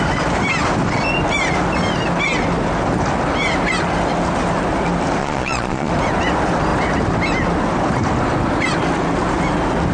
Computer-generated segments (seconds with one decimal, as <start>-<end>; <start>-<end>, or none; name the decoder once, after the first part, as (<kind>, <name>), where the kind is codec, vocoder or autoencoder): 5.2-5.9 (vocoder, Vocos)